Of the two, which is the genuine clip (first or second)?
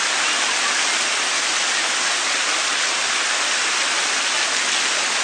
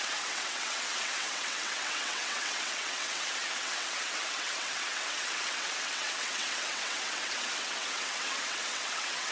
first